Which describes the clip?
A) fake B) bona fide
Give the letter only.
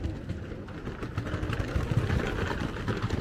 B